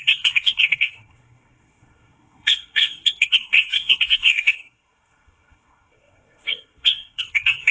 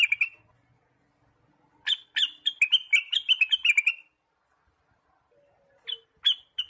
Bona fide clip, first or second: second